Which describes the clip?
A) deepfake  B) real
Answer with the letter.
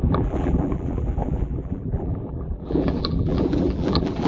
A